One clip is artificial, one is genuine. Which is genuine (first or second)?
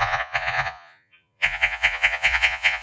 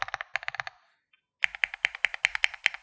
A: second